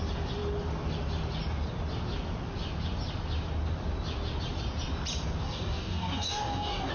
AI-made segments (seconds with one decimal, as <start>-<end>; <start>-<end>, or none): 5.4-6.9